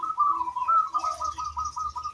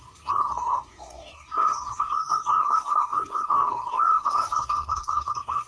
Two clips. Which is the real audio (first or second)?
first